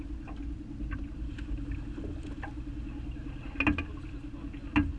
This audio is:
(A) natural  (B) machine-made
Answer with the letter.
A